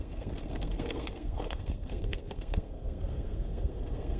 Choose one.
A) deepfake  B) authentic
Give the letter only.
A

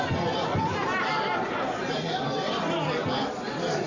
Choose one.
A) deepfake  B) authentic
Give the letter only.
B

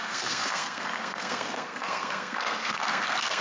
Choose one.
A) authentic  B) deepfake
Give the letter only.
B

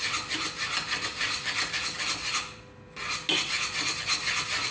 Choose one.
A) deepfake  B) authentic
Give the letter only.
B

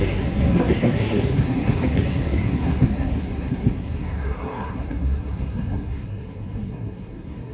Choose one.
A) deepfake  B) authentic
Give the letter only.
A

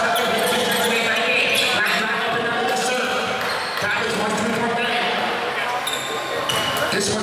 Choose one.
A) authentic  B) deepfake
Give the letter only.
A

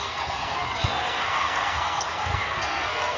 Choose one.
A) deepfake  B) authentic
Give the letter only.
A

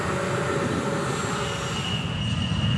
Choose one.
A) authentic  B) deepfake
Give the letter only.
A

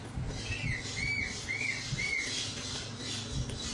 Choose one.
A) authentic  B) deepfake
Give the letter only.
A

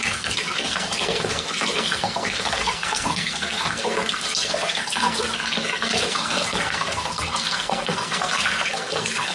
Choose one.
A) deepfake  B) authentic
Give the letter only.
A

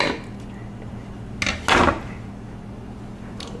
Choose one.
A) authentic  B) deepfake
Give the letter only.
A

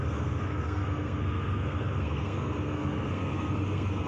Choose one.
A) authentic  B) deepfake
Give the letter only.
B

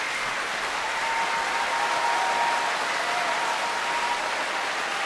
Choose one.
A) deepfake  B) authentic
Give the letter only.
B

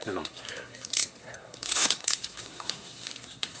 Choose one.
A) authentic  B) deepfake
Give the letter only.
B